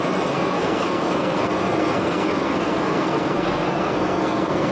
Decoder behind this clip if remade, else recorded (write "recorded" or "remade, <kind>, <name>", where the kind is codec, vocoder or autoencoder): remade, codec, SNAC